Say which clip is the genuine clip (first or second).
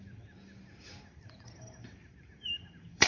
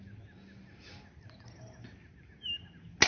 second